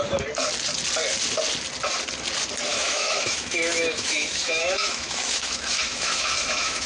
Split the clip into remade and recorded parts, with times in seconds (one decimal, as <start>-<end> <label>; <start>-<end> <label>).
0.0-2.7 recorded; 2.7-6.9 remade